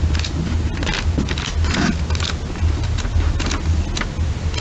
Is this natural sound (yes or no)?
yes